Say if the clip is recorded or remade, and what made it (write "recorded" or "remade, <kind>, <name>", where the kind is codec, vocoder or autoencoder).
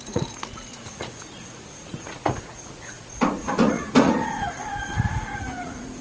remade, vocoder, Vocos